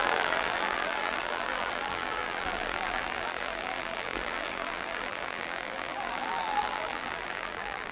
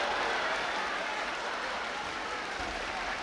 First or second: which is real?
second